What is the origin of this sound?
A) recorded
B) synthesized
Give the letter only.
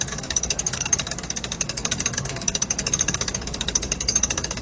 B